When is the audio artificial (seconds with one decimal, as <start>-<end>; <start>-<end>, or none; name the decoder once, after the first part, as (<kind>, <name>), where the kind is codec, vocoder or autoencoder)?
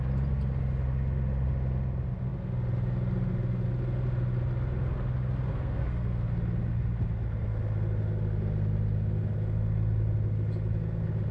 5.5-6.3 (codec, SNAC)